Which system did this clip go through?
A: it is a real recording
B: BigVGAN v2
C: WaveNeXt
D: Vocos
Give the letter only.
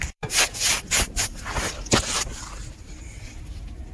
B